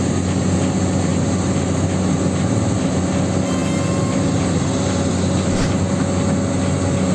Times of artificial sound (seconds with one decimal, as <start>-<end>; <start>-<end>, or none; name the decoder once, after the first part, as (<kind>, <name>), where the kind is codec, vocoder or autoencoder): none